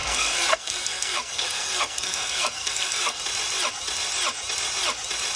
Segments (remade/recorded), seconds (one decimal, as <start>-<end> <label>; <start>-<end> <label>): 0.0-3.2 remade; 3.2-5.4 recorded